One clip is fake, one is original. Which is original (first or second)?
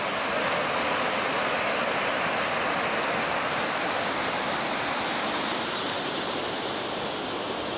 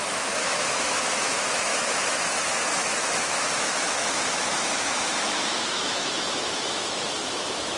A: first